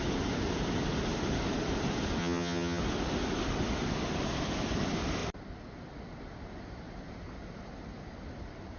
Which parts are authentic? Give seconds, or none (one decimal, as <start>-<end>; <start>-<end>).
0.0-2.2; 2.8-8.8